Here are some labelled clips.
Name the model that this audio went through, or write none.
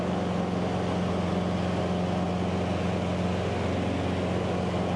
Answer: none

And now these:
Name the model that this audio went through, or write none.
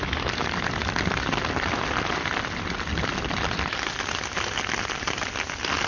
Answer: none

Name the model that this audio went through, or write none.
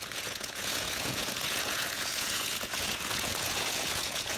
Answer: vocoder, Vocos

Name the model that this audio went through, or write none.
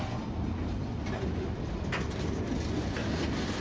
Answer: none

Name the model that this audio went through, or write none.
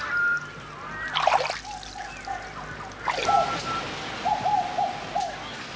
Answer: none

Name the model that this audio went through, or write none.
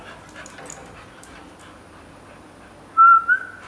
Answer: none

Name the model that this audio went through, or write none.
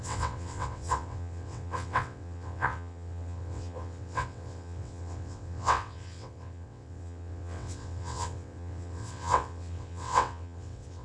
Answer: vocoder, WaveNeXt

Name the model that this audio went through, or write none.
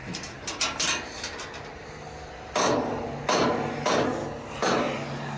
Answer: none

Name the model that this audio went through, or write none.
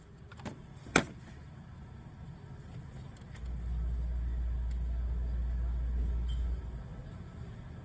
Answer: none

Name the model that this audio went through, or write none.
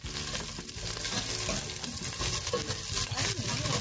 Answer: none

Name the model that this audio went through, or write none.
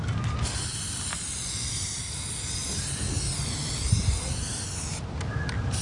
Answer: none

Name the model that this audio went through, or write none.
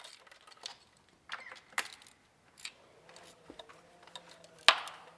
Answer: none